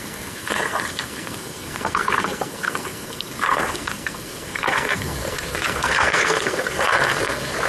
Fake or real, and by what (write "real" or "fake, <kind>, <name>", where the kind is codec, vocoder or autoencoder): fake, codec, SNAC